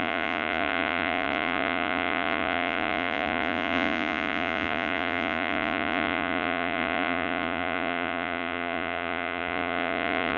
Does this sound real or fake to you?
fake